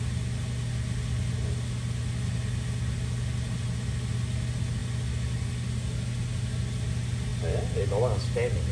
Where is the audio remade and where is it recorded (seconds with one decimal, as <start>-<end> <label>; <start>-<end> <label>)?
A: 0.0-8.7 recorded